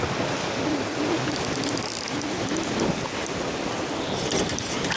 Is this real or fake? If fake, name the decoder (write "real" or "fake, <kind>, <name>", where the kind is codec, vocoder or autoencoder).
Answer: real